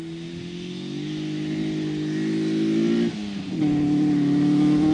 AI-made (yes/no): no